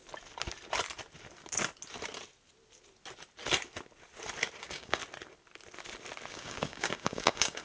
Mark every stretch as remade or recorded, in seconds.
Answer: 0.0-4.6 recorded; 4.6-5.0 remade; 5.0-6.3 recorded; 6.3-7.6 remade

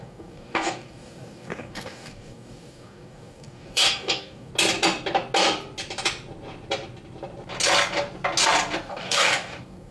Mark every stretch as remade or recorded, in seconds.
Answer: 0.0-4.5 remade; 4.5-8.9 recorded; 8.9-9.9 remade

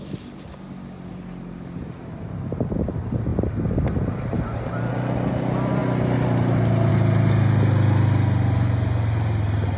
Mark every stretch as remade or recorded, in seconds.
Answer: 0.0-9.8 recorded

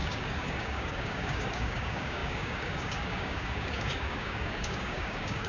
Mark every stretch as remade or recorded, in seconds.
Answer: 0.0-5.5 remade

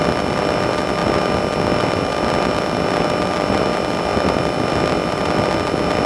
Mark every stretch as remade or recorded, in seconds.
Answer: 0.0-6.1 recorded

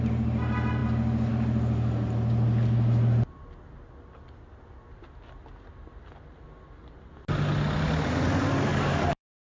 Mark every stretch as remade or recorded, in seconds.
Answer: 0.0-8.7 recorded; 8.7-9.4 remade

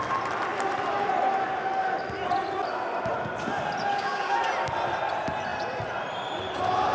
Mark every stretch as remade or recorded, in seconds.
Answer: 0.0-3.9 recorded; 3.9-4.4 remade; 4.4-6.9 recorded